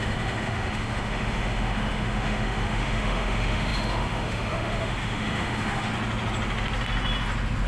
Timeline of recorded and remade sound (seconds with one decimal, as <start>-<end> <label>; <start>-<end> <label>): 0.0-5.9 remade; 5.9-7.7 recorded